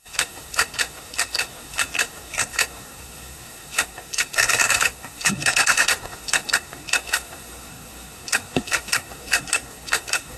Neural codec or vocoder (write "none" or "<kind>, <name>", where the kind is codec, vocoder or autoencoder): codec, SNAC